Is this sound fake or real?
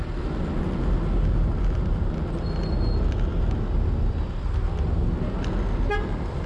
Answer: real